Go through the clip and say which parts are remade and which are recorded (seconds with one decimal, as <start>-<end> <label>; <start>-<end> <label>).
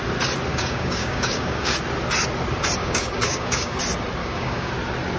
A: 0.0-0.5 recorded; 0.5-1.7 remade; 1.7-2.8 recorded; 2.8-3.8 remade; 3.8-4.2 recorded; 4.2-4.7 remade; 4.7-5.2 recorded